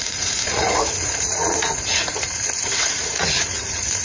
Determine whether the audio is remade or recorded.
remade